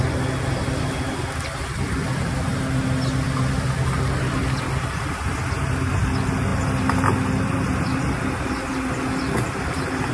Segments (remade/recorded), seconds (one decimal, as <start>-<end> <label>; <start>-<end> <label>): 0.0-10.1 recorded